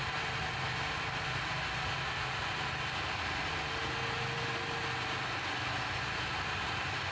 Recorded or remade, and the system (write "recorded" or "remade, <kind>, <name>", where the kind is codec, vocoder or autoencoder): recorded